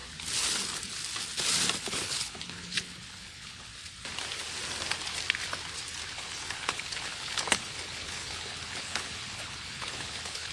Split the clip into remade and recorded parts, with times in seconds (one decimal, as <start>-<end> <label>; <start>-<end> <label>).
0.0-1.8 recorded; 1.8-3.7 remade; 3.7-6.1 recorded; 6.1-10.5 remade